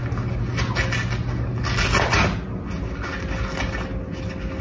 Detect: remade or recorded recorded